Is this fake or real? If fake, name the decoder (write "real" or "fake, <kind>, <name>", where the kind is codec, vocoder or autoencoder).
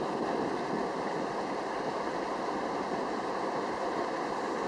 real